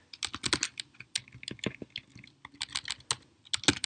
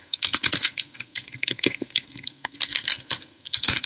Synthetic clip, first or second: second